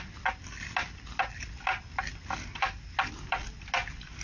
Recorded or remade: recorded